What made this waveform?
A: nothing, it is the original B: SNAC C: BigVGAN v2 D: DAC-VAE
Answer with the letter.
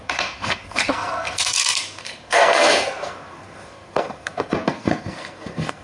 B